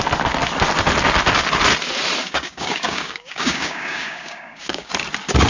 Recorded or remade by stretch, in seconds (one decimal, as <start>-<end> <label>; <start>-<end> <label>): 0.0-2.2 recorded; 2.2-4.9 remade; 4.9-5.5 recorded